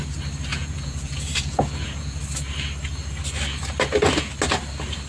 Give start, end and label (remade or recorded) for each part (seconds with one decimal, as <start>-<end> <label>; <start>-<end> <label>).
0.0-0.5 recorded; 0.5-2.2 remade; 2.2-5.1 recorded